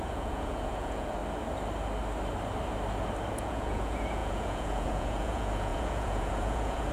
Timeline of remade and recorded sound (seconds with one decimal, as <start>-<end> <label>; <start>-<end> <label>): 0.0-1.2 remade; 1.2-3.3 recorded; 3.3-6.9 remade